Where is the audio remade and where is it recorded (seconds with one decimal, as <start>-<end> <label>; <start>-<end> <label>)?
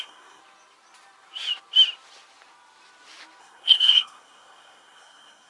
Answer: 0.0-0.4 remade; 0.4-3.4 recorded; 3.4-5.5 remade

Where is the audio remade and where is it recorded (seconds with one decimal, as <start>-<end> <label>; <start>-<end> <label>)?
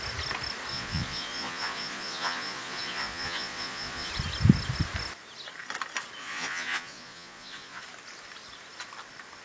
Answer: 0.0-0.7 recorded; 0.7-4.1 remade; 4.1-6.2 recorded; 6.2-7.8 remade; 7.8-9.4 recorded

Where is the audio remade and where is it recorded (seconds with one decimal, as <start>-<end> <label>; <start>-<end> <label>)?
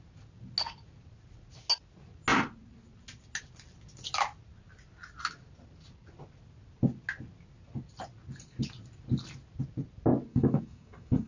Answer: 0.0-10.3 recorded; 10.3-11.3 remade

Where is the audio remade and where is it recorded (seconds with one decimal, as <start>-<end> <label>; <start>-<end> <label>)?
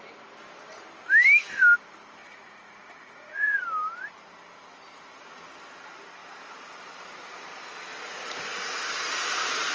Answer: 0.0-2.2 recorded; 2.2-3.6 remade; 3.6-9.7 recorded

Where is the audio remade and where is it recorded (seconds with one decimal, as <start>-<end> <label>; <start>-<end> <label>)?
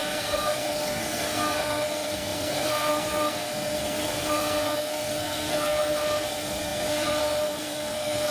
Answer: 0.0-8.3 remade